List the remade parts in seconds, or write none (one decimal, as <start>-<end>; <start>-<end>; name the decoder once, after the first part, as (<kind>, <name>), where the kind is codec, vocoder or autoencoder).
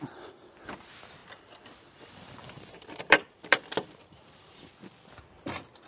1.2-4.7 (vocoder, BigVGAN v2)